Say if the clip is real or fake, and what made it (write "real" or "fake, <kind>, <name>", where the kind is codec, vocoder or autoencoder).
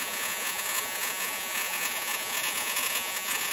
fake, vocoder, Vocos